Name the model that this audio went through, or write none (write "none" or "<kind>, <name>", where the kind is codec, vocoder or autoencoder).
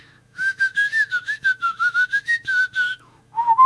autoencoder, DAC-VAE